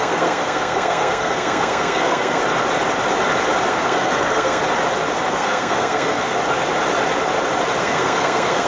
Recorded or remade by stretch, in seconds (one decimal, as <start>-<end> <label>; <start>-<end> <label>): 0.0-2.4 remade; 2.4-3.7 recorded; 3.7-4.6 remade; 4.6-5.3 recorded; 5.3-6.4 remade; 6.4-7.8 recorded; 7.8-8.7 remade